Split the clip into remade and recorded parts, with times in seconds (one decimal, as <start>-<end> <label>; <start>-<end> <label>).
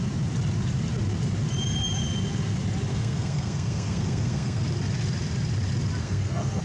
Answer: 0.0-2.9 recorded; 2.9-4.6 remade; 4.6-6.0 recorded; 6.0-6.6 remade